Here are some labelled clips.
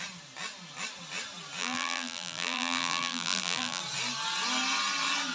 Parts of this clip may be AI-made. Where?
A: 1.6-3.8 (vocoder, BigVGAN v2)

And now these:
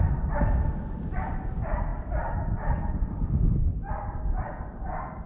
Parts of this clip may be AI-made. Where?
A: none